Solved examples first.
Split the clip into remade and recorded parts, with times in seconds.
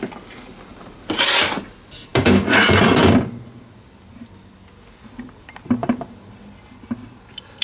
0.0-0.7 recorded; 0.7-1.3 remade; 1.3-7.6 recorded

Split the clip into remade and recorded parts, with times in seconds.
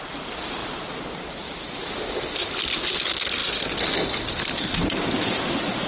0.0-5.9 recorded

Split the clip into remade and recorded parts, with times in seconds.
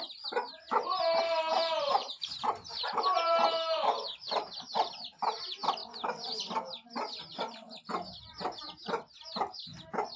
0.0-1.5 recorded; 1.5-4.9 remade; 4.9-10.2 recorded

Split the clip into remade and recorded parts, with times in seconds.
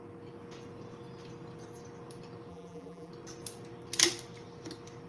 0.0-2.5 recorded; 2.5-3.1 remade; 3.1-5.1 recorded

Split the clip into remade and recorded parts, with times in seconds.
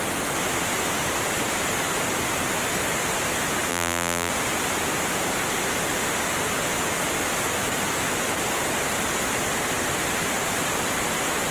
0.0-3.7 recorded; 3.7-4.3 remade; 4.3-11.5 recorded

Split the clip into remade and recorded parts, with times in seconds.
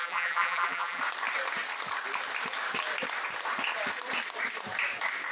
0.0-1.0 remade; 1.0-5.3 recorded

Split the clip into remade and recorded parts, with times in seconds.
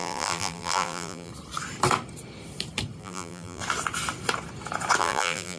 0.0-1.3 remade; 1.3-3.0 recorded; 3.0-3.6 remade; 3.6-5.0 recorded; 5.0-5.6 remade